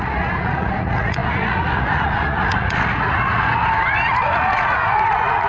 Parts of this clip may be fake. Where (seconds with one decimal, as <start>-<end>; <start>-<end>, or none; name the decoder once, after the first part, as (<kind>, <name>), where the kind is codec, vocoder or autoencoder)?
0.0-5.5 (vocoder, Vocos)